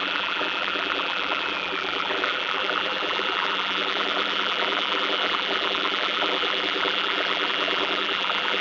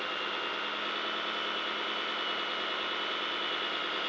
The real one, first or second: second